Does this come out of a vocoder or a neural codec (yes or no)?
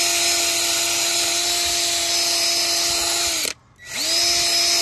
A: no